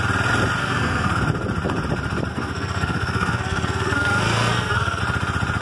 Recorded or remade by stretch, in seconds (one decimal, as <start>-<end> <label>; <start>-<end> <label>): 0.0-0.6 recorded; 0.6-1.2 remade; 1.2-2.3 recorded; 2.3-5.0 remade; 5.0-5.6 recorded